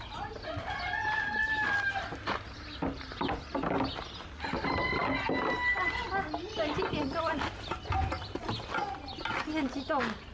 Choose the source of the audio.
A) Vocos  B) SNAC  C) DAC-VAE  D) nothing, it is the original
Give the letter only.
D